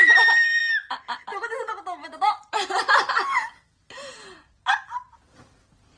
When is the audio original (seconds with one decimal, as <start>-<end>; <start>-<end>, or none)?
0.0-2.0; 4.4-6.0